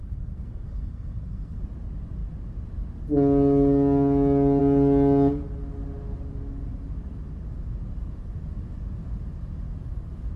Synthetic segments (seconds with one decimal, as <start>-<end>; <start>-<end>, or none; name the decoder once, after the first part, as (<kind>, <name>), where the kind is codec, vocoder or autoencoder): 0.0-1.6 (codec, SNAC)